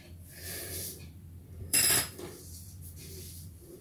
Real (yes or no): no